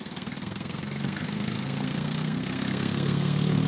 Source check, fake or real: fake